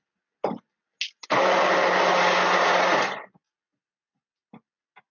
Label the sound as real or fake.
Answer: real